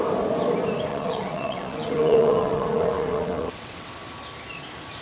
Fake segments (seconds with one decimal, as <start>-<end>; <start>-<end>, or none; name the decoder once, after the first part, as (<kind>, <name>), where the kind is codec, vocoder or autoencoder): 0.9-3.9 (vocoder, WaveNeXt)